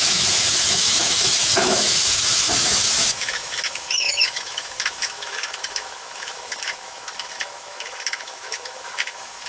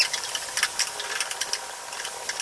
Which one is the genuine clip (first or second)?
second